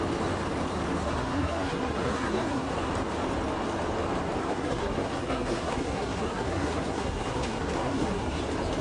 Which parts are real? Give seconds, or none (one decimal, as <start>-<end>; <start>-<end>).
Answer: 0.0-1.0; 2.9-4.4; 8.4-8.8